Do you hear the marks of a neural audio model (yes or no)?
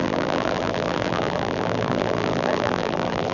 yes